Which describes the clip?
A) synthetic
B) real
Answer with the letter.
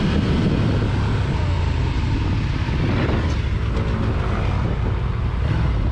B